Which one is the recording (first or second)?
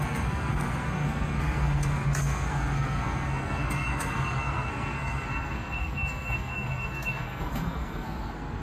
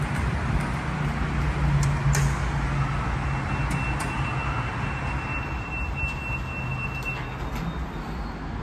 second